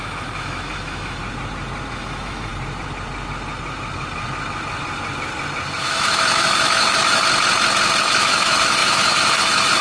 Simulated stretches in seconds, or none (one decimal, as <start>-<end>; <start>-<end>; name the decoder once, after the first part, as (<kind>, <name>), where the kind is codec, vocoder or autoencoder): 0.0-1.2 (autoencoder, DAC-VAE); 1.9-2.5; 5.8-7.2; 8.0-9.8